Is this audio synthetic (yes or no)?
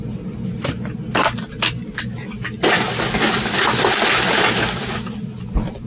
no